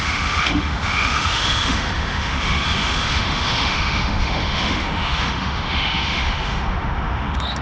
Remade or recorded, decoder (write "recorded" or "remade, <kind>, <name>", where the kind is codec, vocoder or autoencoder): remade, autoencoder, DAC-VAE